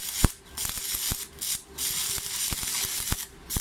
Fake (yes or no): no